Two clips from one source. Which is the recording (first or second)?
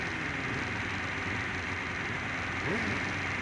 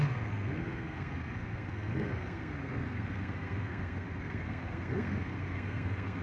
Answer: first